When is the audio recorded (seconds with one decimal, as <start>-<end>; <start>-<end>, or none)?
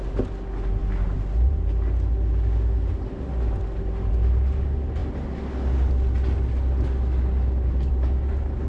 0.0-8.7